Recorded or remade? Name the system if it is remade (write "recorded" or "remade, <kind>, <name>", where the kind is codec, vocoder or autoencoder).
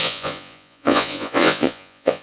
remade, vocoder, Vocos